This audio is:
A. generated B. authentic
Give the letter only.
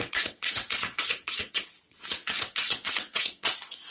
A